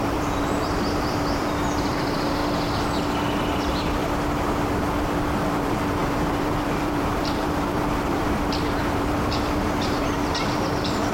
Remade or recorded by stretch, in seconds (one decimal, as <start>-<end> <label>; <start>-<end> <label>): 0.0-2.4 remade; 2.4-3.5 recorded; 3.5-4.0 remade; 4.0-5.2 recorded; 5.2-11.1 remade